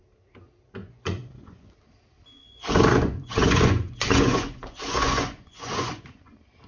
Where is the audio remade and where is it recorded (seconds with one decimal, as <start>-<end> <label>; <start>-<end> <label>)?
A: 0.0-0.8 recorded; 0.8-1.7 remade; 1.7-2.3 recorded; 2.3-6.3 remade; 6.3-6.7 recorded